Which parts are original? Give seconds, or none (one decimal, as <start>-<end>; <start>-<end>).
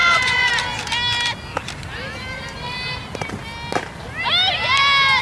0.5-5.2